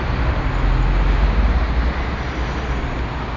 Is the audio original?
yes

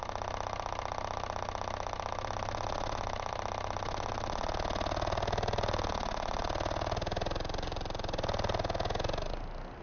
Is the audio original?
yes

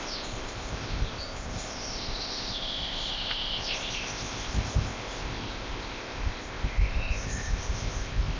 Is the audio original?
no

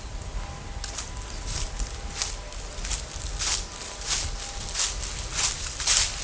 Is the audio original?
yes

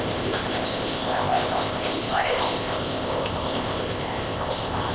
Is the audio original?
no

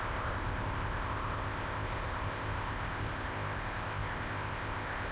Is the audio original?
no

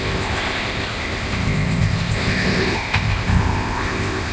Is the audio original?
no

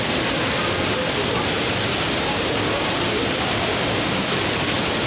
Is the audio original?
yes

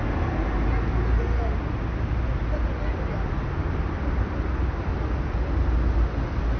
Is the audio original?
yes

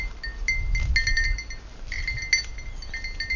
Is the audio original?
yes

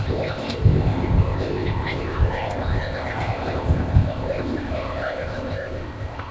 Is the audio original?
no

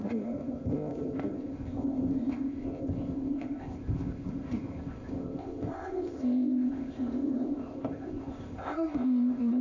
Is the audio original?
no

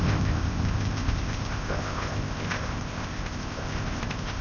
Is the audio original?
no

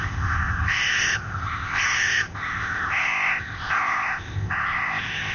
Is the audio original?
no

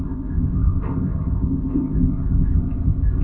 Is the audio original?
no